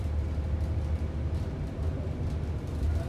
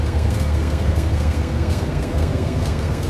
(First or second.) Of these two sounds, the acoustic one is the first